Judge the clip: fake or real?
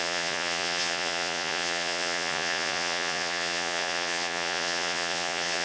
fake